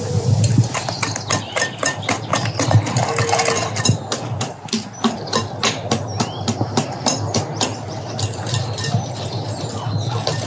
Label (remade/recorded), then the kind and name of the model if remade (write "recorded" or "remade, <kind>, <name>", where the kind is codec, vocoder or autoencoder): recorded